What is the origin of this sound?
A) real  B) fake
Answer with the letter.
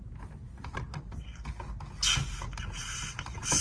A